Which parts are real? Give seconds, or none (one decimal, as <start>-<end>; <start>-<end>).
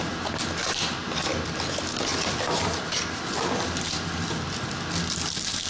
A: 0.0-5.7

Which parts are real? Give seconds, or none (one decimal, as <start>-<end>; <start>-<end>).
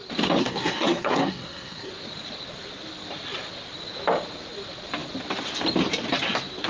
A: 0.0-0.4; 1.9-6.7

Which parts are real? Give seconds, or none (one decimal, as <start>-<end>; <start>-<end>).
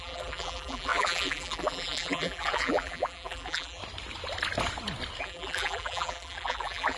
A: 3.8-5.2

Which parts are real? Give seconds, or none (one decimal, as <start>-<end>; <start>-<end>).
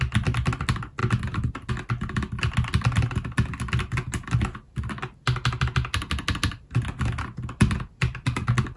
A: 0.0-8.8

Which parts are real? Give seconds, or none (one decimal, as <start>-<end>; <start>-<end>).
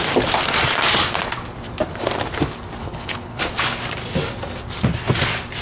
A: 0.0-2.8; 3.4-5.6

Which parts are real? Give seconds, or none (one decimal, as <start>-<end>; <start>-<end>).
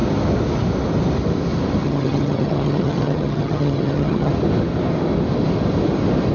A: 0.0-1.8; 4.3-6.3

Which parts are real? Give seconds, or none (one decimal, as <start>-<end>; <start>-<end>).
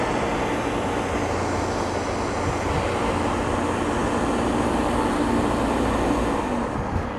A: 0.0-7.2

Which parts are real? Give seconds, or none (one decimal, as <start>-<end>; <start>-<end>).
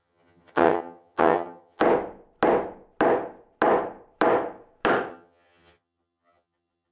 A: 1.8-5.1